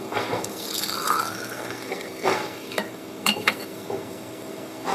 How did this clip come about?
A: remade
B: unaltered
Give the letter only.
A